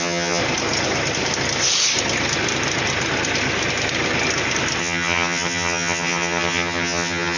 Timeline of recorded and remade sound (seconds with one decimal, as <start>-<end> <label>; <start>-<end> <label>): 0.0-0.4 remade; 0.4-4.8 recorded; 4.8-7.4 remade